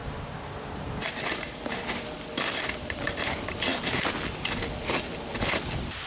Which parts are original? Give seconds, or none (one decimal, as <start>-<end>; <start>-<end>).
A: 2.0-6.1